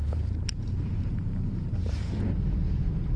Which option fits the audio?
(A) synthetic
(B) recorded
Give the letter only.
A